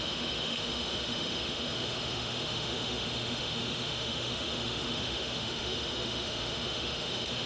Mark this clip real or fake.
fake